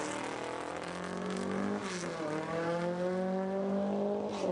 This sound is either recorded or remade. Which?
recorded